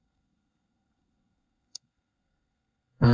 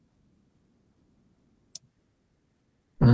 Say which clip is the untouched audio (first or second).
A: second